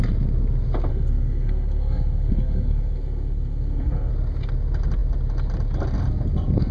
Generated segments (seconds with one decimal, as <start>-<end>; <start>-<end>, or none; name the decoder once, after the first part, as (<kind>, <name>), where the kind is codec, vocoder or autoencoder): 0.9-4.1 (codec, SNAC)